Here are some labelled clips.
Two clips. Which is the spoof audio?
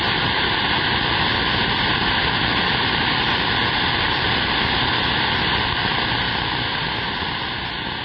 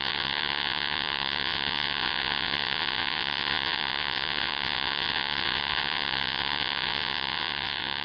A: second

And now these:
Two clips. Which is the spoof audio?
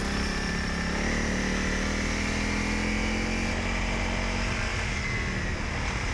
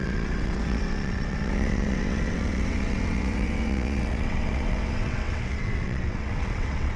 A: second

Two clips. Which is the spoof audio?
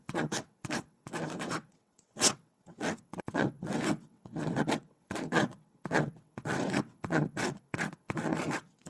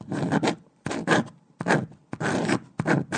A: first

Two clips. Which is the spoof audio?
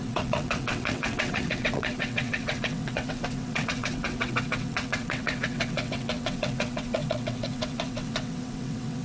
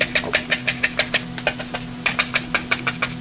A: first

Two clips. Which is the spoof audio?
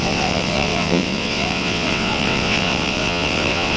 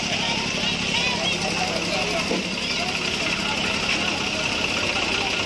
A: first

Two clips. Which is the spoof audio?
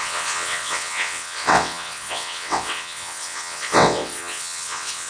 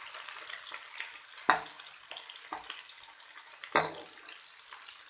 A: first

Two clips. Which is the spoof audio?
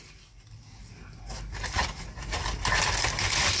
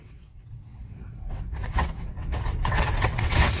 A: second